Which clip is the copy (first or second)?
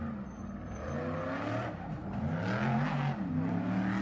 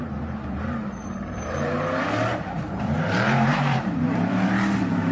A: second